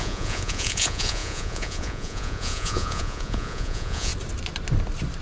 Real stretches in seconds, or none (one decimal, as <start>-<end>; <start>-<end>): 4.1-5.2